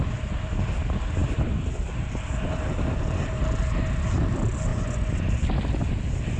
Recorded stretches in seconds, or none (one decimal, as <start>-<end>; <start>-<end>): 0.0-4.7; 5.3-6.4